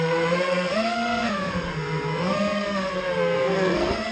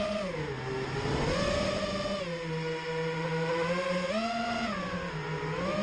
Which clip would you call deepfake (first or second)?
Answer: first